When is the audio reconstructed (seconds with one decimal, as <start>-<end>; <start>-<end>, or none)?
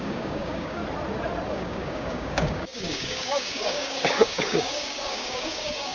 0.0-0.8; 1.5-5.9